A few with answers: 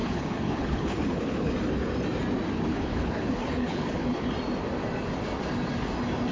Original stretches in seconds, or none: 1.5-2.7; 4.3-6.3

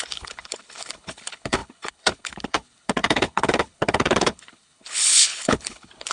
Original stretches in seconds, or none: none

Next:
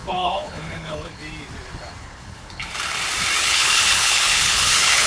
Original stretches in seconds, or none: 1.2-2.0; 2.6-3.4